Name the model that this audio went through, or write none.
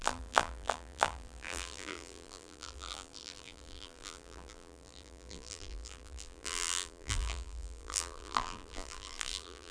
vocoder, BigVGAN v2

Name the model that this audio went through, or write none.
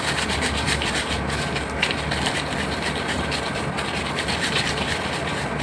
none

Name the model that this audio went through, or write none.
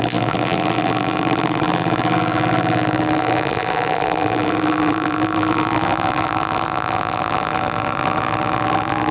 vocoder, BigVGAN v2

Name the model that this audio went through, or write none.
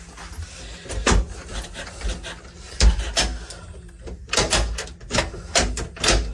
none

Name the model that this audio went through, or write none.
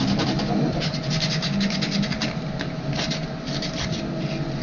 vocoder, BigVGAN v2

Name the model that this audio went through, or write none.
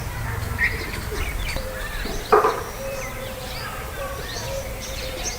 vocoder, BigVGAN v2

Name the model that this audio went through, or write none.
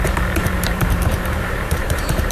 vocoder, BigVGAN v2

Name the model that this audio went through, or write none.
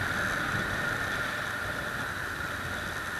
none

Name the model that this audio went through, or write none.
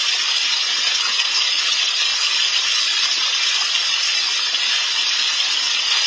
none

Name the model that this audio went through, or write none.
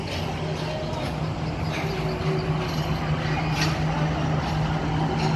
none